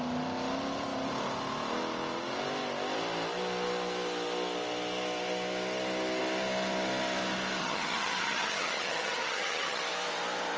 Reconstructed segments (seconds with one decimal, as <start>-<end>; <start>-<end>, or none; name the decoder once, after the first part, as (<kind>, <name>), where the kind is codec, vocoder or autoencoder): 7.6-9.8 (vocoder, HiFi-GAN)